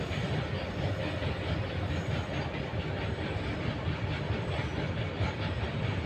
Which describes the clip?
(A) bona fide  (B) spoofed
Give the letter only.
A